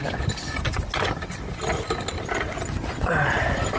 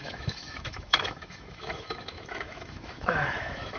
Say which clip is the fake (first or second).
second